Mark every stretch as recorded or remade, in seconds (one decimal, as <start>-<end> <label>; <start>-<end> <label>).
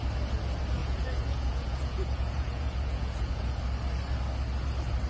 0.0-0.8 recorded; 0.8-3.6 remade; 3.6-5.1 recorded